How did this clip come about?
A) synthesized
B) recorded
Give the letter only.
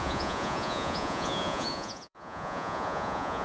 A